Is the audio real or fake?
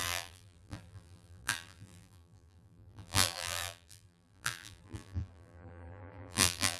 fake